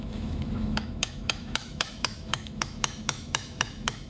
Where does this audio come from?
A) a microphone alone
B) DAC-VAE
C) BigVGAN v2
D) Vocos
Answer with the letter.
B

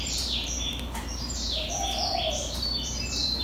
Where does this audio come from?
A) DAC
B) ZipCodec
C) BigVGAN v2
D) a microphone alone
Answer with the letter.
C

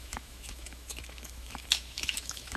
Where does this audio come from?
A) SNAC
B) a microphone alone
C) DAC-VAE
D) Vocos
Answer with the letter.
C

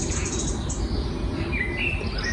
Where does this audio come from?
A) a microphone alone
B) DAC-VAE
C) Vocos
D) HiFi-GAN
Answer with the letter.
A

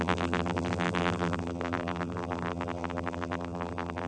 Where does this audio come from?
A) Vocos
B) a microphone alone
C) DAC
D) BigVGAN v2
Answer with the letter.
D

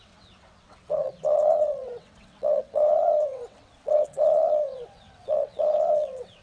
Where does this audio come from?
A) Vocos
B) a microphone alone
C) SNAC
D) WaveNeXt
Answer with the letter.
D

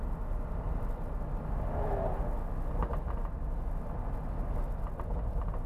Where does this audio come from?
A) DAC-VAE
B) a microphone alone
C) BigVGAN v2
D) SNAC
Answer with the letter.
B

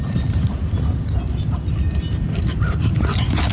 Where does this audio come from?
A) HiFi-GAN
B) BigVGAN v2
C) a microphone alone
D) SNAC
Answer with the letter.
C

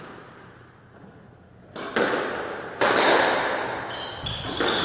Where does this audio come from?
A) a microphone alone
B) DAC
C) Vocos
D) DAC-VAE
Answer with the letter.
A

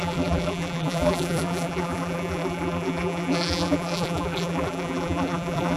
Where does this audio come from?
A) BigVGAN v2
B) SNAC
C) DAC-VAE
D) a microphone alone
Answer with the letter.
A